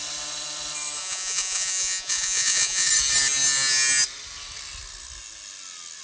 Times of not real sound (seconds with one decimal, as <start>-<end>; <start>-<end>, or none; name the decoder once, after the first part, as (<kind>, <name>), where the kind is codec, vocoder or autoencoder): 1.0-2.9 (vocoder, Vocos)